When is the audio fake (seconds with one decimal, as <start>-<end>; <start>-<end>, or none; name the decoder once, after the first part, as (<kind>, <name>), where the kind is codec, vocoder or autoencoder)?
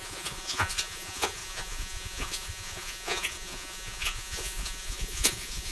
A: 0.0-5.7 (vocoder, Vocos)